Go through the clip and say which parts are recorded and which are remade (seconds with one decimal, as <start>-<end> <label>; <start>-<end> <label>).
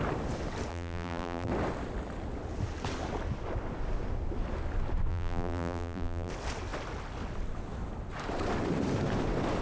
0.0-0.7 recorded; 0.7-1.5 remade; 1.5-5.1 recorded; 5.1-6.3 remade; 6.3-9.6 recorded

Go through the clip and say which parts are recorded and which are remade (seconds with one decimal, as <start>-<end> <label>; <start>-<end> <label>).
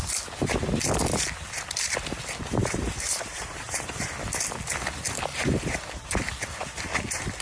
0.0-2.6 recorded; 2.6-4.2 remade; 4.2-5.3 recorded; 5.3-6.3 remade; 6.3-7.4 recorded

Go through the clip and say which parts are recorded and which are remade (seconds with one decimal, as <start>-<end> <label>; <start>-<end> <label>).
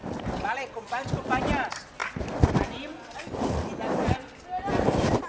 0.0-5.3 recorded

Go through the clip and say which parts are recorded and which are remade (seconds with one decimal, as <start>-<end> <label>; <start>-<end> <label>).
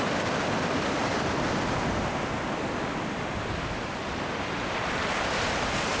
0.0-1.0 remade; 1.0-3.1 recorded; 3.1-4.0 remade; 4.0-5.3 recorded; 5.3-6.0 remade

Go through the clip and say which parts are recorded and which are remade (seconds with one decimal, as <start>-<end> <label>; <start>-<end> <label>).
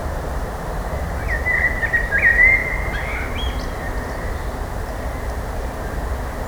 0.0-0.5 remade; 0.5-1.4 recorded; 1.4-2.2 remade; 2.2-6.5 recorded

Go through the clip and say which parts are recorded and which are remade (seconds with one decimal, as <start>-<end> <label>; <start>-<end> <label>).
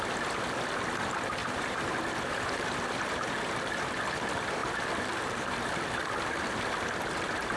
0.0-1.4 recorded; 1.4-4.0 remade; 4.0-4.6 recorded; 4.6-6.6 remade; 6.6-7.6 recorded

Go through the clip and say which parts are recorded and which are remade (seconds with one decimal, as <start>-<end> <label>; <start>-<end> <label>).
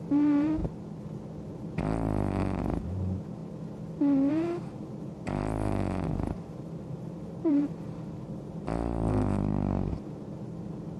0.0-0.6 remade; 0.6-1.5 recorded; 1.5-3.4 remade; 3.4-4.3 recorded; 4.3-11.0 remade